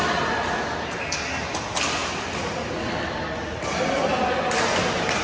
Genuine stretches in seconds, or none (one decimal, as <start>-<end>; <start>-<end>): 0.0-5.2